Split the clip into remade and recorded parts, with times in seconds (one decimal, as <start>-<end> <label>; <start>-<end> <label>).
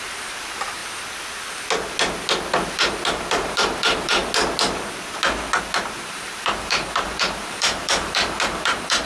0.0-0.8 remade; 0.8-2.7 recorded; 2.7-4.2 remade; 4.2-6.0 recorded; 6.0-9.1 remade